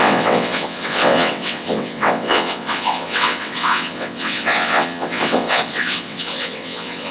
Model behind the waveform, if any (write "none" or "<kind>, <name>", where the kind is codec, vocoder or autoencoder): vocoder, WaveNeXt